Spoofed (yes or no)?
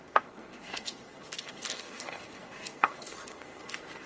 yes